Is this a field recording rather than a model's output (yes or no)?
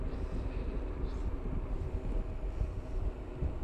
yes